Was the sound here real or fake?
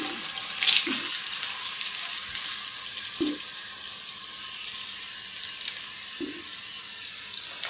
real